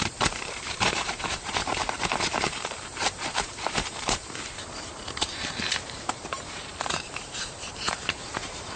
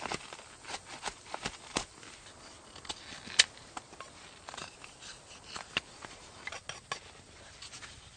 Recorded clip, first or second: second